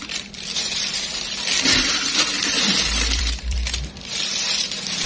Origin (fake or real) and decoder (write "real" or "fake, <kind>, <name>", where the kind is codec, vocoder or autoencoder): fake, vocoder, BigVGAN v2